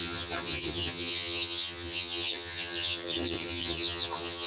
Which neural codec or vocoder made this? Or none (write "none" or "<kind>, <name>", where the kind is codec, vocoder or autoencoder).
vocoder, HiFi-GAN